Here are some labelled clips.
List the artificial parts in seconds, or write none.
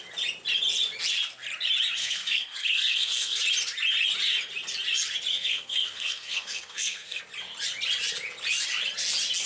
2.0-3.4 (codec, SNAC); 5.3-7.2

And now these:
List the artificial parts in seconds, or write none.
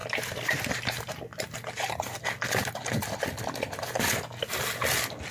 none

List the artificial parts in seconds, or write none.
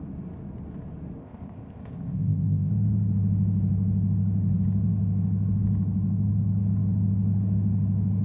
1.2-2.7 (codec, ZipCodec)